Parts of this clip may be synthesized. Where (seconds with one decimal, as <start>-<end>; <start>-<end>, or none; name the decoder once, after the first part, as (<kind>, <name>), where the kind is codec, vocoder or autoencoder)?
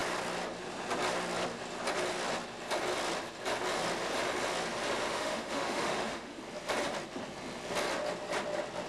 5.1-6.4 (autoencoder, DAC-VAE)